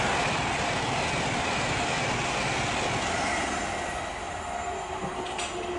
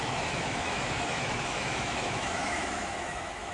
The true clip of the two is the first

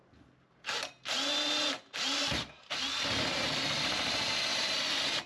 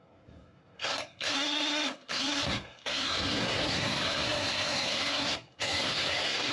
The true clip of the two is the first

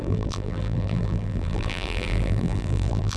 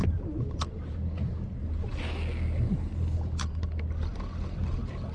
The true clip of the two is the second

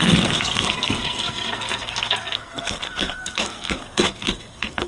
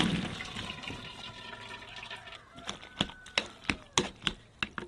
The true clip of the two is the second